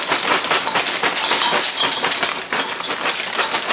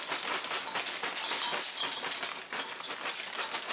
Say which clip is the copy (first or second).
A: first